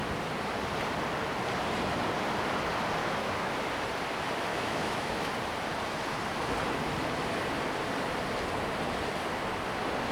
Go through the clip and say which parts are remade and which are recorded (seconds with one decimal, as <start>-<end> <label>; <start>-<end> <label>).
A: 0.0-3.0 recorded; 3.0-3.5 remade; 3.5-4.5 recorded; 4.5-5.3 remade; 5.3-10.1 recorded